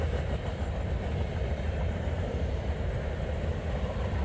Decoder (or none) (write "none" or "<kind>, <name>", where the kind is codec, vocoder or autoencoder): none